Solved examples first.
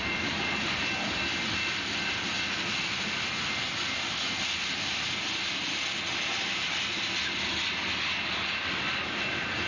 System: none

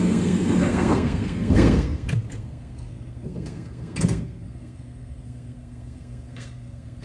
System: codec, SNAC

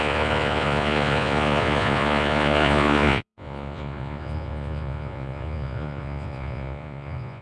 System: vocoder, Vocos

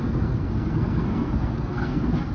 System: codec, SNAC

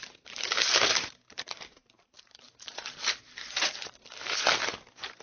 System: vocoder, BigVGAN v2